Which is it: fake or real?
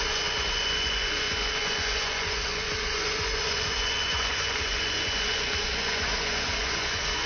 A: fake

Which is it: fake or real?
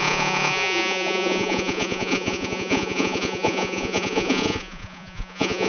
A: fake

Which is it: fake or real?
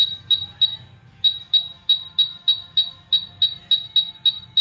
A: real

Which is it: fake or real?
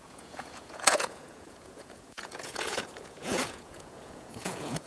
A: fake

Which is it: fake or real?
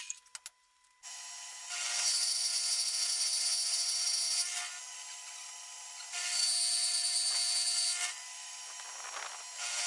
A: real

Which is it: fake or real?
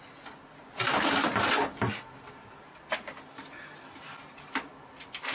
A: real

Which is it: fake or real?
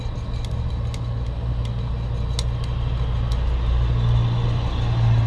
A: real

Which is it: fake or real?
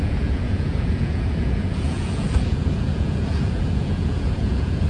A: fake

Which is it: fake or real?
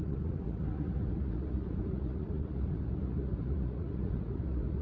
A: fake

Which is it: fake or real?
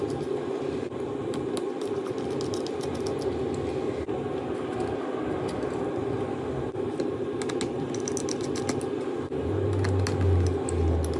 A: real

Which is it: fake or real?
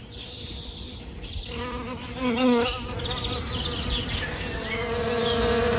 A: real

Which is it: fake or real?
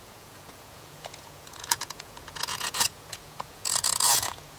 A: fake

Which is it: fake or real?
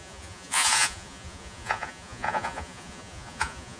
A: fake